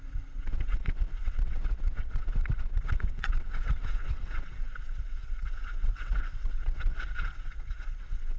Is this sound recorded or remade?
remade